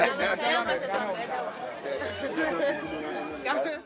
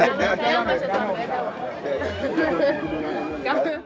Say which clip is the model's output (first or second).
second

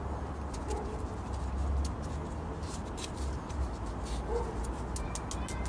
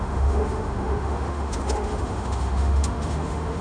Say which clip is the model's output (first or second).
second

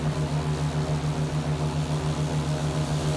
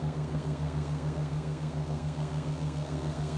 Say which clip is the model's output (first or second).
second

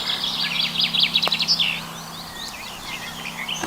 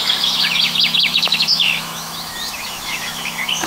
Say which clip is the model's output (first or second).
second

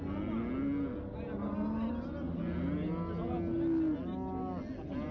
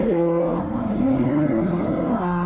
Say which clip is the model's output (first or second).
second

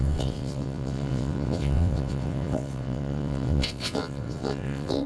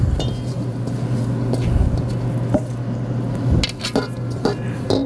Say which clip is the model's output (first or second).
first